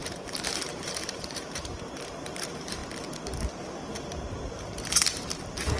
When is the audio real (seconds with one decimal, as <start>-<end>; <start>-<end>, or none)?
2.8-3.5